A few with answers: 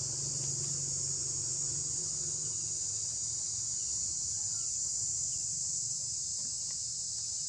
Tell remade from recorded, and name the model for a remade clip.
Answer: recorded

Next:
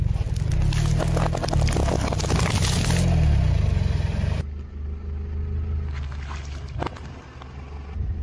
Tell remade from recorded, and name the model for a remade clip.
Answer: recorded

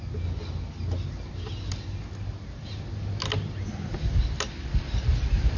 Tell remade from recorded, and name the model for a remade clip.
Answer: recorded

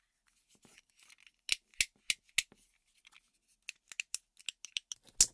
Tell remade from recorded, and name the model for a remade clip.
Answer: recorded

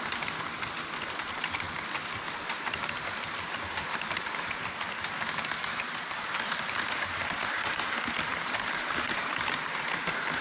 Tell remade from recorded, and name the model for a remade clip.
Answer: remade, vocoder, BigVGAN v2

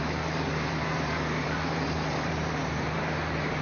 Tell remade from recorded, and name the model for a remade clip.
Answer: remade, vocoder, BigVGAN v2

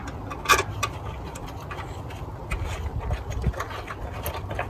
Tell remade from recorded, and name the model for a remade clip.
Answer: recorded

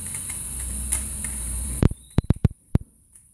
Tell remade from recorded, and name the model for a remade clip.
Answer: remade, vocoder, BigVGAN v2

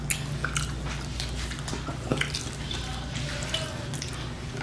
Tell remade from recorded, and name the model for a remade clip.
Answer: recorded